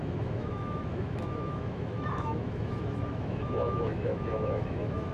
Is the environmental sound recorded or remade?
remade